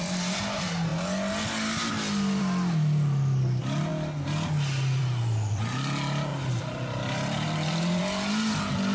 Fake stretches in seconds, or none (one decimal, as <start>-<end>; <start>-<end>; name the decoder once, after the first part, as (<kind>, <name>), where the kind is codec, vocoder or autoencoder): 6.3-8.0 (vocoder, BigVGAN v2)